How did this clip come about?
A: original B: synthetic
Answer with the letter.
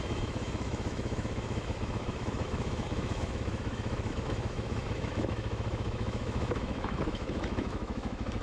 B